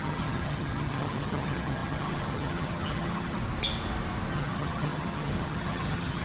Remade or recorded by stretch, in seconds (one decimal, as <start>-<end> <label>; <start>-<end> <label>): 0.0-3.4 remade; 3.4-4.3 recorded; 4.3-6.2 remade